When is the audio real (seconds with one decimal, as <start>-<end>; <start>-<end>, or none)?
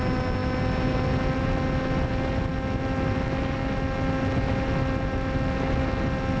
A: 0.0-6.4